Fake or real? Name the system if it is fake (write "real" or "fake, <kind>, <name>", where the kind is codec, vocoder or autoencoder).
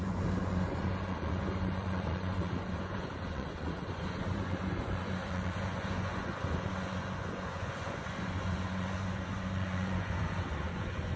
fake, vocoder, Vocos